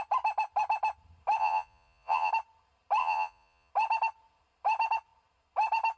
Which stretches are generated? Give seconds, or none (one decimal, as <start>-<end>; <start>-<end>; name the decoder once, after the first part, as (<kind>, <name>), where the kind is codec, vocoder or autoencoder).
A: 1.4-2.3 (vocoder, Vocos); 3.0-3.7